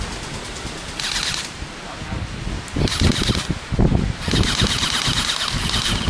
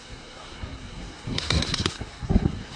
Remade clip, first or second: second